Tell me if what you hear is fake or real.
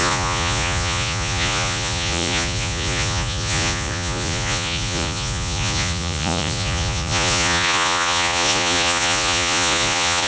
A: fake